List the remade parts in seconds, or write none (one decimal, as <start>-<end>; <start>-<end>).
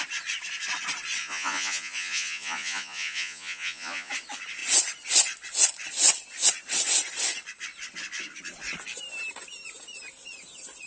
1.2-4.1